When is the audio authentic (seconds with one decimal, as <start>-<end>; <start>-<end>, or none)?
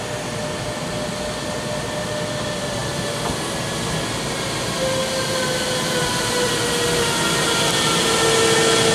0.0-8.9